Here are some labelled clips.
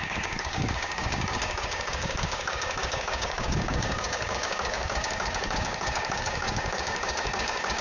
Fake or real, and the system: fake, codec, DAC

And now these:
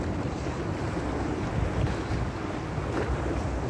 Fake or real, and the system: real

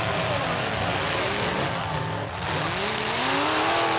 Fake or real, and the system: real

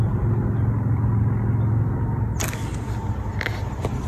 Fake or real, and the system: real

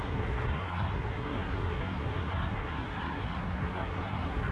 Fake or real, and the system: fake, codec, SNAC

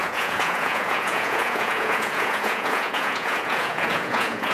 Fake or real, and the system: fake, vocoder, Vocos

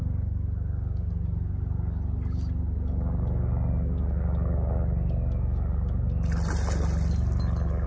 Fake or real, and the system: real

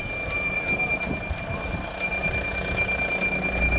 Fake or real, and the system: real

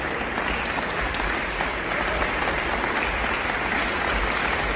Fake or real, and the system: real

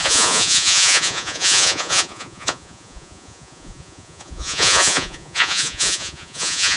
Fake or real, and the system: fake, vocoder, Vocos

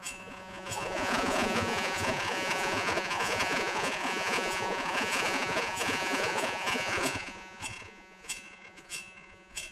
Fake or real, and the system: fake, vocoder, Vocos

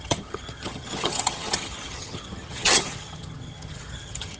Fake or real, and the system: fake, vocoder, HiFi-GAN